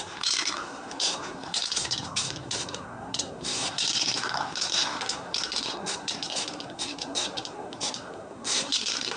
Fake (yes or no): yes